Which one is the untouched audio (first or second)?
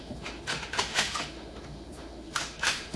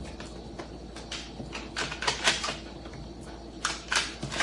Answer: second